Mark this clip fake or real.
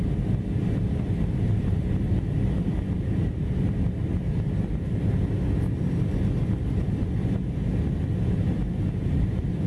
real